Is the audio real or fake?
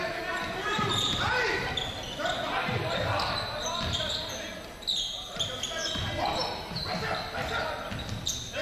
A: real